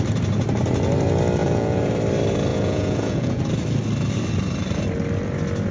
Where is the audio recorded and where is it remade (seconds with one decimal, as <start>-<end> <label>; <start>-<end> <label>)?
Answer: 0.0-1.4 recorded; 1.4-1.9 remade; 1.9-2.5 recorded; 2.5-3.4 remade; 3.4-5.7 recorded